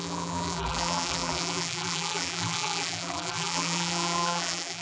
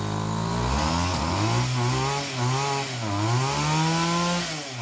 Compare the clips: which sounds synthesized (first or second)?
first